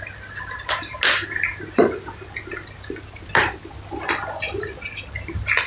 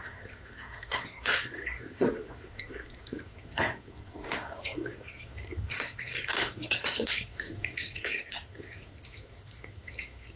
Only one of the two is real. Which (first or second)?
first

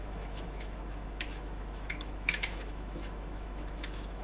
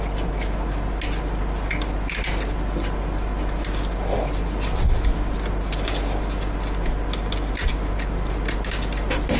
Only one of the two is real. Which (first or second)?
second